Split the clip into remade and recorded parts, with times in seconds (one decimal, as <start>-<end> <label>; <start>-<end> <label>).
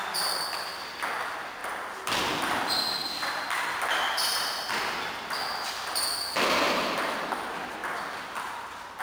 0.0-1.6 remade; 1.6-2.6 recorded; 2.6-3.0 remade; 3.0-3.6 recorded; 3.6-7.8 remade; 7.8-9.0 recorded